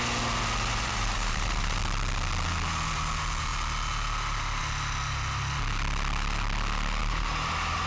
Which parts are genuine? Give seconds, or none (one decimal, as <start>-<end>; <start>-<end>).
0.0-0.7; 1.8-7.0